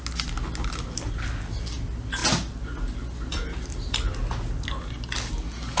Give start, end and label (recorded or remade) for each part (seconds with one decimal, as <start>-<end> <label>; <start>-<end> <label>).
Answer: 0.0-3.3 recorded; 3.3-4.3 remade; 4.3-5.8 recorded